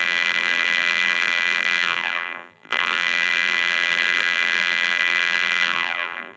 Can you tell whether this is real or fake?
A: fake